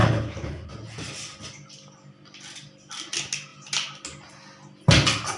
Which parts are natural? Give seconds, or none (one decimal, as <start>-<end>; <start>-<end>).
0.7-5.4